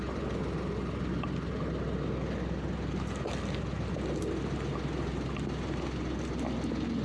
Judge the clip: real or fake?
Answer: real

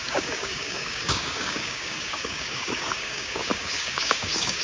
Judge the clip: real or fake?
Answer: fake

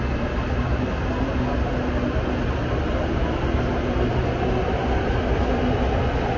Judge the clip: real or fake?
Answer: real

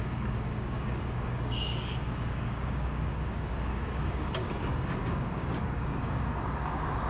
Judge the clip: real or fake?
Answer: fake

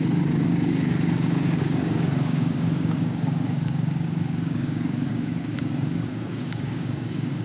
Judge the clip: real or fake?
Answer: fake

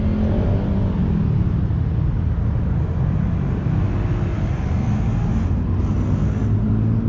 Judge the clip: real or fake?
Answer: real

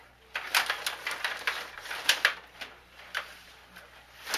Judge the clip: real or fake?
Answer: real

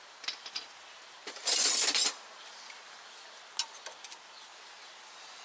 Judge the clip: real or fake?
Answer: real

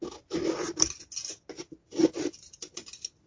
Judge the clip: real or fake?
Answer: real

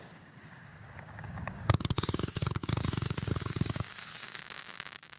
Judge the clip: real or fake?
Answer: fake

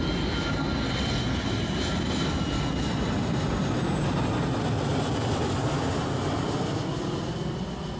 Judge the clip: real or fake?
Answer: real